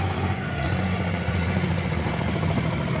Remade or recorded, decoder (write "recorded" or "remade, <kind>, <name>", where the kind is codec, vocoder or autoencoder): remade, vocoder, Vocos